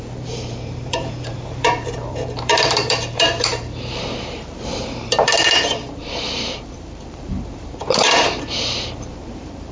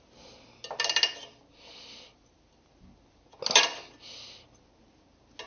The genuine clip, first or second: second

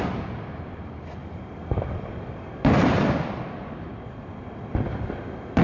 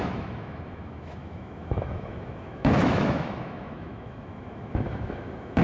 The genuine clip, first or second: first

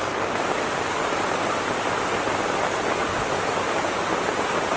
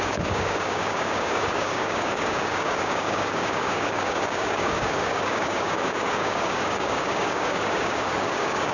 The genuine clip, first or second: first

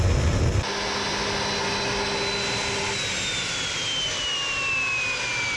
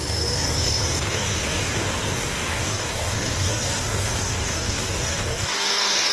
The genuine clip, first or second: first